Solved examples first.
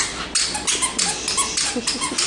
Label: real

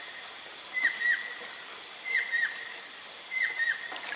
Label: real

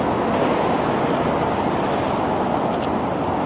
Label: real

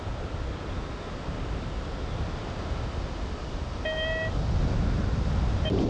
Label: real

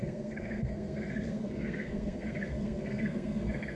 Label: fake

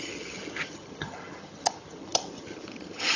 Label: fake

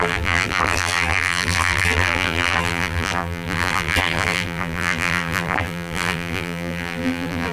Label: fake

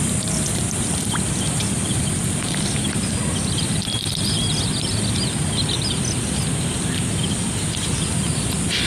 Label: fake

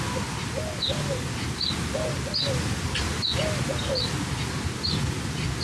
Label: real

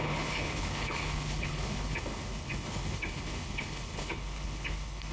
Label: fake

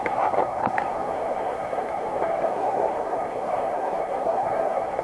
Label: fake